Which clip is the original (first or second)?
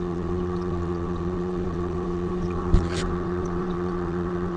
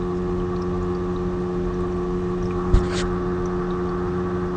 second